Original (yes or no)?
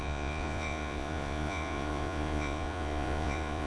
no